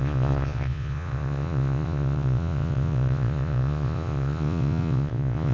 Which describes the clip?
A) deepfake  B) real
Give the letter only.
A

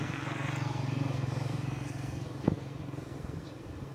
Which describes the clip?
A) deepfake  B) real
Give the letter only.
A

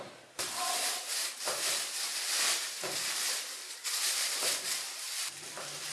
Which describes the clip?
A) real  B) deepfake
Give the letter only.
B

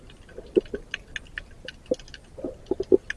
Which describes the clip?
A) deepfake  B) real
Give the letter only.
B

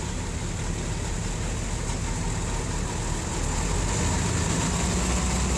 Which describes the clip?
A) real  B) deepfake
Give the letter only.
A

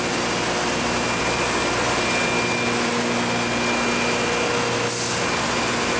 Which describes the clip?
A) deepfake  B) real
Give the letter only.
B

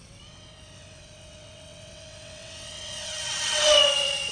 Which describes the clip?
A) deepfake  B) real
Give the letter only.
A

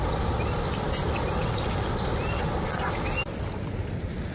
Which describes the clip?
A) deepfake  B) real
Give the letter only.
B